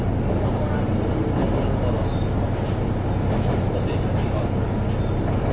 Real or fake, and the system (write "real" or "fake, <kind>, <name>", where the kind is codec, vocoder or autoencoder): real